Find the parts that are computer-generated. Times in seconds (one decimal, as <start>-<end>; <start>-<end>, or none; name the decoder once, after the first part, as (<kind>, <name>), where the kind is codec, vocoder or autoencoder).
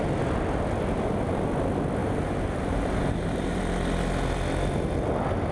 2.0-3.6 (vocoder, BigVGAN v2)